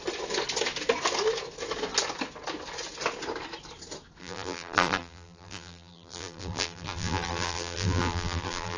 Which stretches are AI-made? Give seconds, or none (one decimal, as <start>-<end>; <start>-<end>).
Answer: 4.2-8.8